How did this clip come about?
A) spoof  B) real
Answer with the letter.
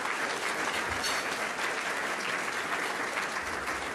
B